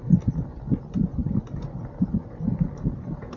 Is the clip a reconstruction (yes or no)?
no